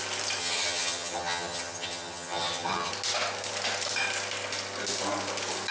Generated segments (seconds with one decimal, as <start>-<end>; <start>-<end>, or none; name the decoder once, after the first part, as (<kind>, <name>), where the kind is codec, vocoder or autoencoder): 0.4-2.9 (vocoder, HiFi-GAN)